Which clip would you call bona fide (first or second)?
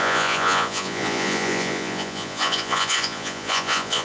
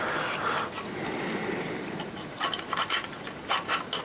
second